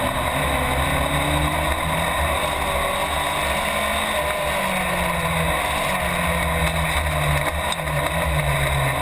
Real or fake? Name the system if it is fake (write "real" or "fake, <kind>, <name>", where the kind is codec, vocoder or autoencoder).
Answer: real